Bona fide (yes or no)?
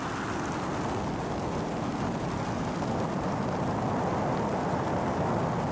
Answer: yes